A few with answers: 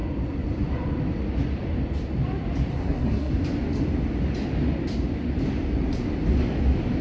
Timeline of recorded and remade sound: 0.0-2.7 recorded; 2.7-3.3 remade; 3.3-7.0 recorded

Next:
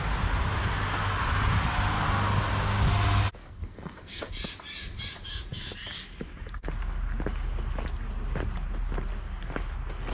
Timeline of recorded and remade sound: 0.0-3.4 recorded; 3.4-4.3 remade; 4.3-10.1 recorded

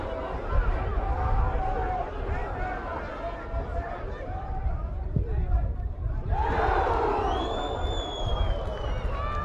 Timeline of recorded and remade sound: 0.0-2.4 recorded; 2.4-6.8 remade; 6.8-9.4 recorded

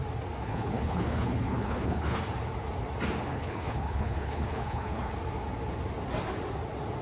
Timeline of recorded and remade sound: 0.0-0.5 recorded; 0.5-2.2 remade; 2.2-3.3 recorded; 3.3-5.1 remade; 5.1-7.0 recorded

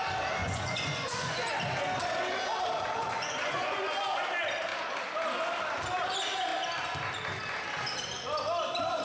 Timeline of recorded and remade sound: 0.0-0.4 recorded; 0.4-1.5 remade; 1.5-3.0 recorded; 3.0-4.2 remade; 4.2-9.0 recorded

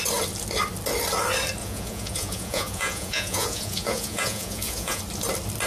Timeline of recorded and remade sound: 0.0-1.6 recorded; 1.6-5.0 remade; 5.0-5.7 recorded

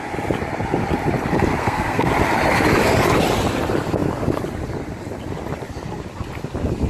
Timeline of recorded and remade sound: 0.0-1.6 recorded; 1.6-2.1 remade; 2.1-6.9 recorded